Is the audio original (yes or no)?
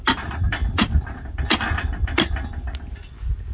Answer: yes